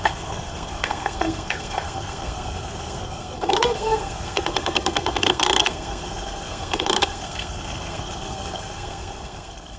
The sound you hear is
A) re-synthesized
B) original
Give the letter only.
A